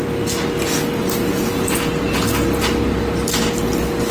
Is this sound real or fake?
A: real